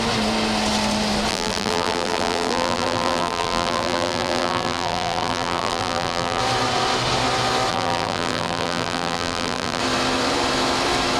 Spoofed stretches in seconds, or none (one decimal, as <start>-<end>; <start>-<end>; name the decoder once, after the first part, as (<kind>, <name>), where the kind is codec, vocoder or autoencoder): 1.3-6.4 (vocoder, BigVGAN v2); 7.7-9.8